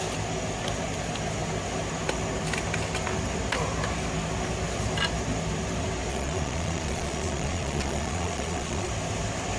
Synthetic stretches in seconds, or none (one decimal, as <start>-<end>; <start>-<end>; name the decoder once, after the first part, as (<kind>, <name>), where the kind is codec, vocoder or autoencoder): 6.1-8.9 (vocoder, Vocos)